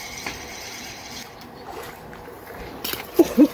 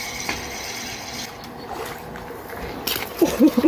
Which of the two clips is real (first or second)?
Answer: second